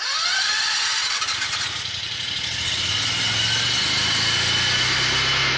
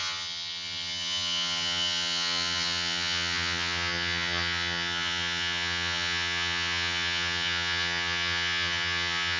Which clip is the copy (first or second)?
second